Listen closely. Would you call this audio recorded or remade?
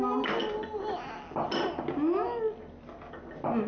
recorded